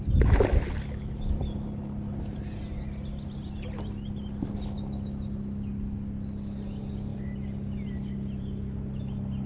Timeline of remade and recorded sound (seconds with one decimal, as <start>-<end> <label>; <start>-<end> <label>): 0.0-9.5 recorded